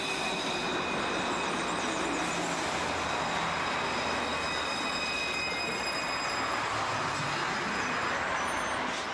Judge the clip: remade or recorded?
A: recorded